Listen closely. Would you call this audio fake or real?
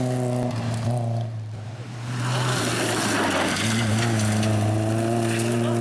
real